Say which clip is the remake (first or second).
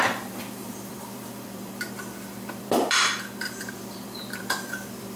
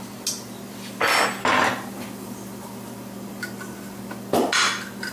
first